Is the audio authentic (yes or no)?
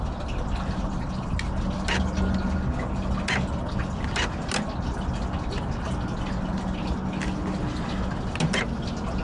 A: yes